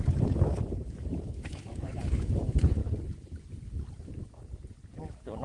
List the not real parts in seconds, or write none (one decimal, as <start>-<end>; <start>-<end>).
0.0-2.8; 5.0-5.4